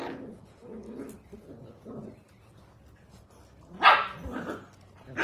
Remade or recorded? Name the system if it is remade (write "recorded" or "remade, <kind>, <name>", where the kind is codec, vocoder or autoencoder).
recorded